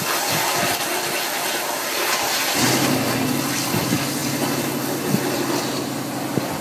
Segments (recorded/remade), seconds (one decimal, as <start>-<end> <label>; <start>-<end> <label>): 0.0-6.6 recorded